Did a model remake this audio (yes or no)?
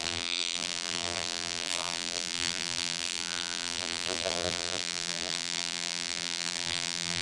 yes